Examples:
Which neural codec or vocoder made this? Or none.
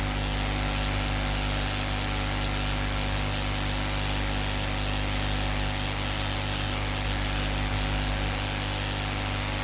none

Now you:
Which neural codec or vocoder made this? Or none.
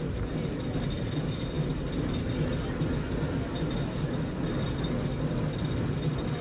none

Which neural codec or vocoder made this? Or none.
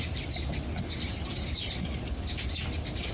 none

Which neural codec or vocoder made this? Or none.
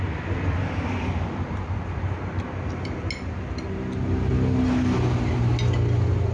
none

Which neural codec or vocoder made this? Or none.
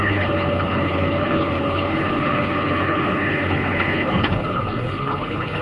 codec, HILCodec